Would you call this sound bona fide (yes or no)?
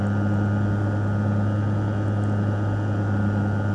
yes